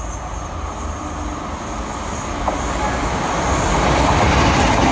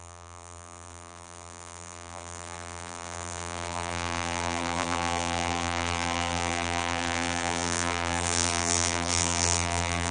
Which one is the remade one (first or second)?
second